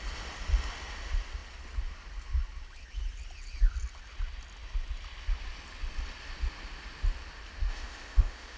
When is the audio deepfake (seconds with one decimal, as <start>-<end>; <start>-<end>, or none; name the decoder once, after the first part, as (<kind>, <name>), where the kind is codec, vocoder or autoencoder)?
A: 7.7-8.6 (codec, ZipCodec)